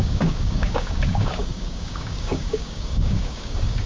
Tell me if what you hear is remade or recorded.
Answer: remade